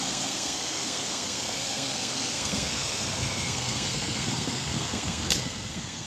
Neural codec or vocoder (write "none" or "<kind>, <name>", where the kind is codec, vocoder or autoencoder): codec, SNAC